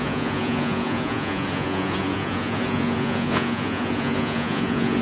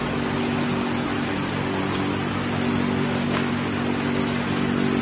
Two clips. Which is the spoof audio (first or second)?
first